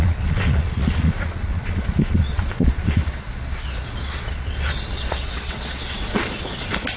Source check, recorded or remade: remade